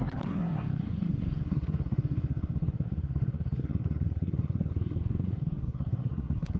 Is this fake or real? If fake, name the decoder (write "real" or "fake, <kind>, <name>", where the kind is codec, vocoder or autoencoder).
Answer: fake, codec, SNAC